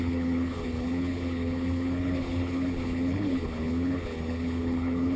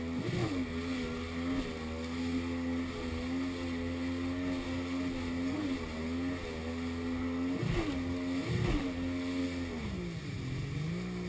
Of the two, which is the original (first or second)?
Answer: second